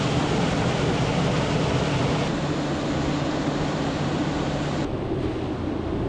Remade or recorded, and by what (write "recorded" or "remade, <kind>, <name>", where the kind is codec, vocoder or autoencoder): recorded